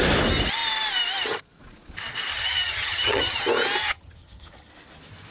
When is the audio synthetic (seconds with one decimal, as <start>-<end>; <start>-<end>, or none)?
2.3-3.4; 3.8-4.7